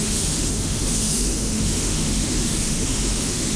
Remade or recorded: remade